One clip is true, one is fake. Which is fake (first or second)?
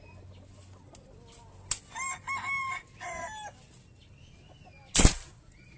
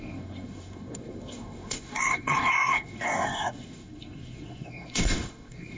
second